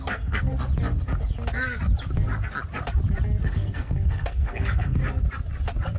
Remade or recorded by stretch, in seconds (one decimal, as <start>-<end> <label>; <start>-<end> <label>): 0.0-0.5 remade; 0.5-3.4 recorded; 3.4-5.0 remade; 5.0-6.0 recorded